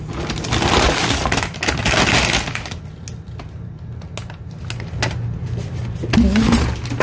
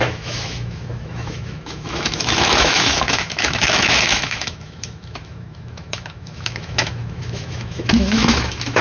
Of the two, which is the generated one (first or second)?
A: second